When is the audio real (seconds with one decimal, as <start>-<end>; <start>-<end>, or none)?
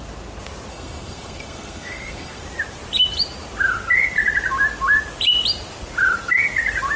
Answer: 0.0-0.7; 2.4-7.0